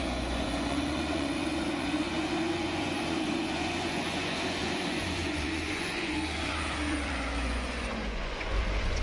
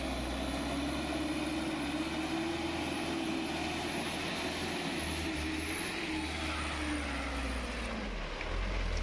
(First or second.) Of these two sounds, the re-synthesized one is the first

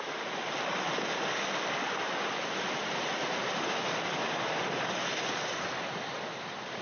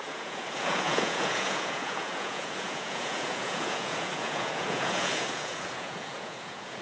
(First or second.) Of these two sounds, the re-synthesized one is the second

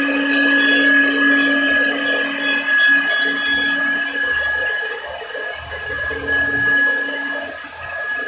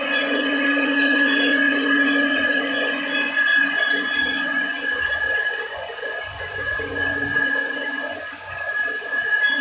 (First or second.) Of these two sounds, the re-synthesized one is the second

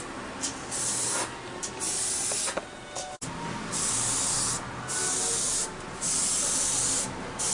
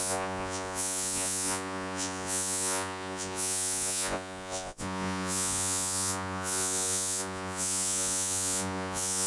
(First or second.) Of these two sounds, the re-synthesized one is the second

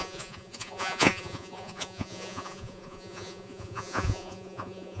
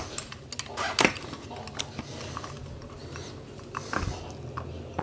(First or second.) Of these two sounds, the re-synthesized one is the first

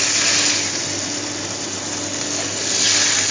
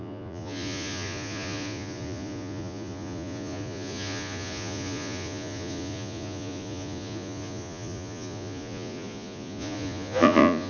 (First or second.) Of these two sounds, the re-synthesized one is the second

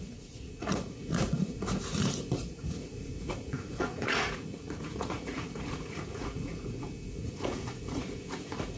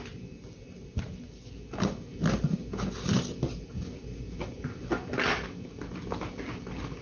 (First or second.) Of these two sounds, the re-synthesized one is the first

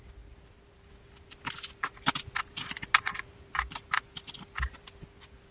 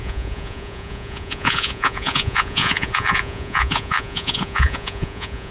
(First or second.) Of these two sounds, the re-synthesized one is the second